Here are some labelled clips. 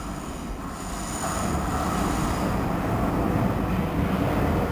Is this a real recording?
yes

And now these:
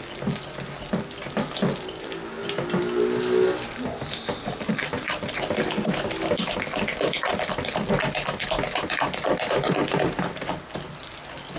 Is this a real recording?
yes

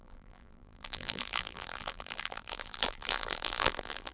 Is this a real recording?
no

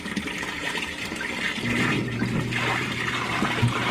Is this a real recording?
no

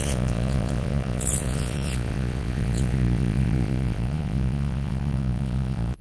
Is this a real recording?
no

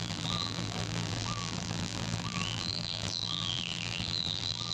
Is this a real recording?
no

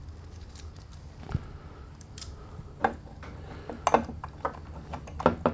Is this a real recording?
yes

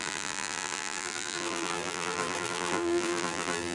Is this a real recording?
no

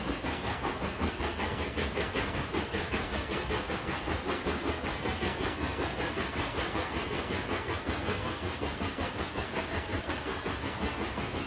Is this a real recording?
no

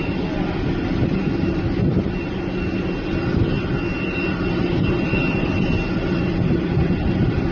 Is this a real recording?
yes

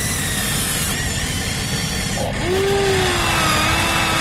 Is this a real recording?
yes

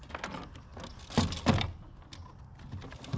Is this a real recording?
yes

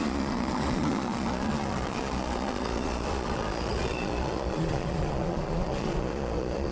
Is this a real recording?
no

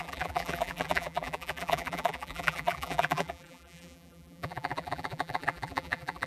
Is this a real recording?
no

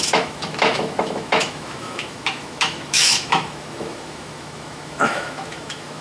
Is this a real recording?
no